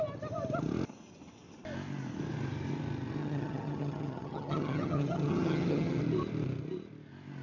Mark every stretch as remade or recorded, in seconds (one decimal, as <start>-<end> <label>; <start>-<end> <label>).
0.0-3.2 recorded; 3.2-6.0 remade; 6.0-7.4 recorded